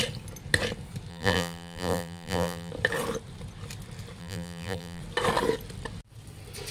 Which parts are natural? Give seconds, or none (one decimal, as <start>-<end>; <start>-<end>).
0.0-1.1; 2.7-4.2; 5.0-6.7